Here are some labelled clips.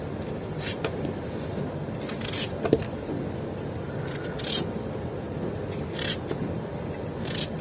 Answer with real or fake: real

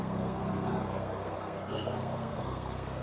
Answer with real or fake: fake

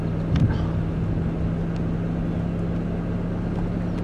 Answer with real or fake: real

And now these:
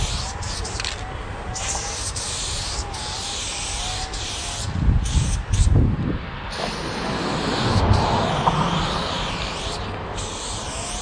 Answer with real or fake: real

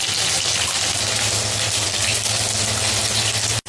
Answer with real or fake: real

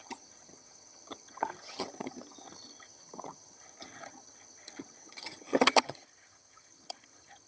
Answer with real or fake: fake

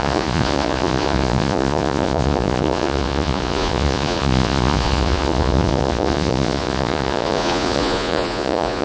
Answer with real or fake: fake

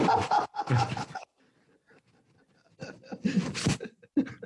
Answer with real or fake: real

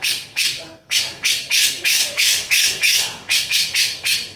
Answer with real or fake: fake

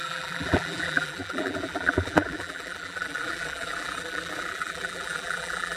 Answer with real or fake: fake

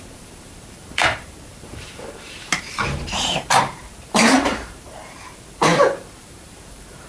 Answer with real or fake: fake